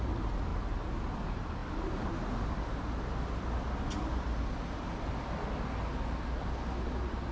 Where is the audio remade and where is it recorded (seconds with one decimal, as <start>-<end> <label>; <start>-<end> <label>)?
0.0-7.3 recorded

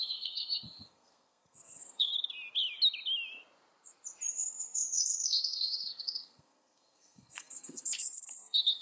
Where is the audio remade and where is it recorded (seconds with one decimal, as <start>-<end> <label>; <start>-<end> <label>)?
0.0-2.1 remade; 2.1-4.3 recorded; 4.3-8.8 remade

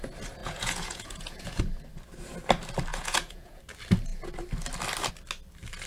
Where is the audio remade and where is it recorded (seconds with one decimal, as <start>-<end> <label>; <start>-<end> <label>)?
0.0-0.4 recorded; 0.4-1.6 remade; 1.6-2.9 recorded; 2.9-3.6 remade; 3.6-5.9 recorded

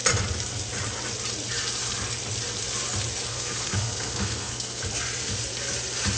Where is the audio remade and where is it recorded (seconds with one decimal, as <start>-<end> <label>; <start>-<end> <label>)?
0.0-3.3 recorded; 3.3-4.8 remade; 4.8-6.2 recorded

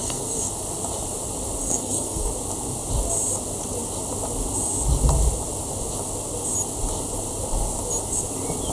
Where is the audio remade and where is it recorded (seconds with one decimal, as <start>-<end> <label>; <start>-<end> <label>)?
0.0-0.5 remade; 0.5-1.6 recorded; 1.6-2.3 remade; 2.3-8.7 recorded

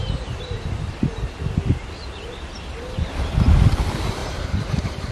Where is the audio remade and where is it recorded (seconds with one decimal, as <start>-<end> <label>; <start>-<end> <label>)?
0.0-4.2 recorded; 4.2-5.1 remade

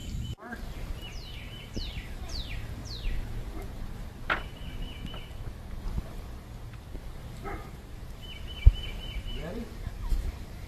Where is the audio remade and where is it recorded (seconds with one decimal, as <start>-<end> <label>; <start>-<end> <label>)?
0.0-2.8 remade; 2.8-8.0 recorded; 8.0-10.7 remade

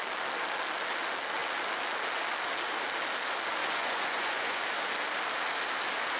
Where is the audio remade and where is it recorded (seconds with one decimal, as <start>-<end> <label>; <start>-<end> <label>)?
0.0-3.6 recorded; 3.6-4.6 remade; 4.6-6.2 recorded